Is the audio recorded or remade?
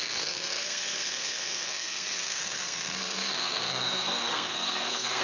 remade